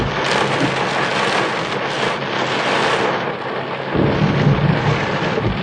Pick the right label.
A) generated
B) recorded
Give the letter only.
B